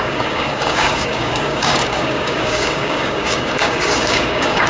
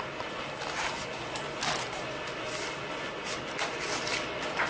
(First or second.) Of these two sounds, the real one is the second